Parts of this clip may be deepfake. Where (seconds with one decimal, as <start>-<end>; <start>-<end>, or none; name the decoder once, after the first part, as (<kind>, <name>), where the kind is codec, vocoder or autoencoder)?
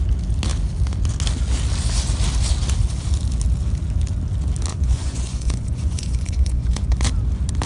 4.7-7.1 (vocoder, Vocos)